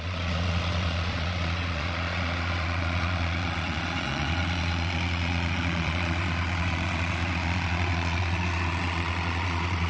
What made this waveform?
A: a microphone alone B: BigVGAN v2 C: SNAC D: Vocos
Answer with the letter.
D